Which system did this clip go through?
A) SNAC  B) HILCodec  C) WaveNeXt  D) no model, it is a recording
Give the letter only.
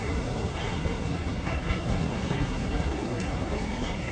A